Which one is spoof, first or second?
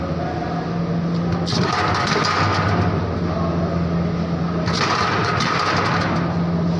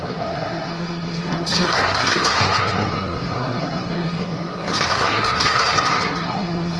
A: second